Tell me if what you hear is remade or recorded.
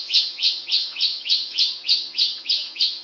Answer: remade